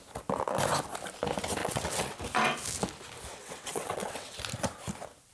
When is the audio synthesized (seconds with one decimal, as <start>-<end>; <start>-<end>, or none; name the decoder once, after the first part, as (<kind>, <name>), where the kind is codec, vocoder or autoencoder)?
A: 1.6-2.2 (vocoder, WaveNeXt); 3.3-4.4